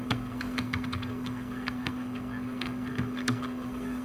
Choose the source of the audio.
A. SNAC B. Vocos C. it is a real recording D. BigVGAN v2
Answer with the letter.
A